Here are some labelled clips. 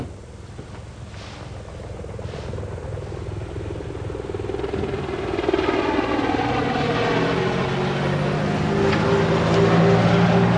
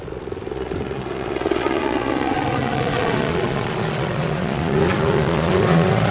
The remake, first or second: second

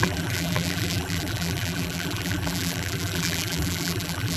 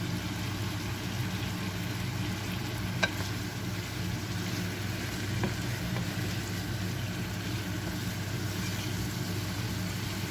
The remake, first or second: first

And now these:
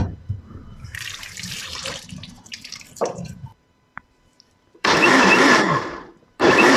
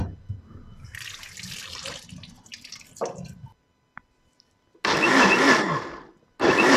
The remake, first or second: first